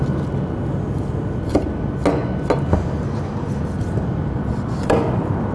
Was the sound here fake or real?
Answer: real